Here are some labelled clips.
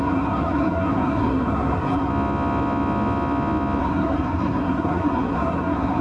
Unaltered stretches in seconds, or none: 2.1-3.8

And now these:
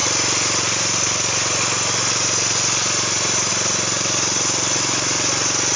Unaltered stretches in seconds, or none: 0.0-5.8

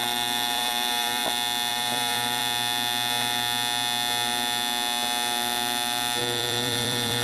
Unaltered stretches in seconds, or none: 1.2-1.7; 2.4-6.2

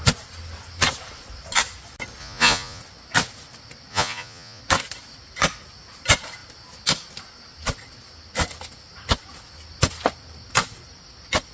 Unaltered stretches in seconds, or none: 0.0-2.2; 2.8-3.9; 4.6-11.5

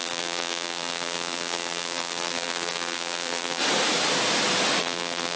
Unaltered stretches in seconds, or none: 3.6-4.8

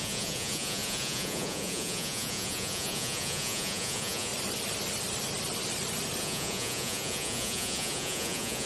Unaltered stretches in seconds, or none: 4.3-6.2